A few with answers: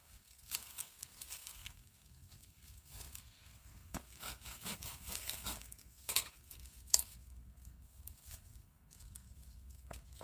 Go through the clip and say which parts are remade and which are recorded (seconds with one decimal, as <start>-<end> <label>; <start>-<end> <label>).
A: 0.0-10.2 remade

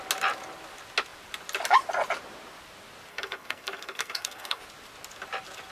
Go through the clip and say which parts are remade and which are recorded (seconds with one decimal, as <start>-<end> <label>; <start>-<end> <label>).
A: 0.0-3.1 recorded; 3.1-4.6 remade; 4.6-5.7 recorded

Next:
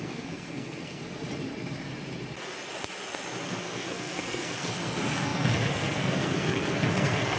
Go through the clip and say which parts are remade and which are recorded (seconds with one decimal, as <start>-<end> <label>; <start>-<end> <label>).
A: 0.0-1.0 remade; 1.0-3.6 recorded; 3.6-7.4 remade